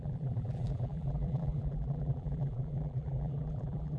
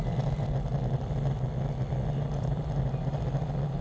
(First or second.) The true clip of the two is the second